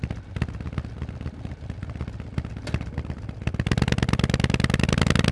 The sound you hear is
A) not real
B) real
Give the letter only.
B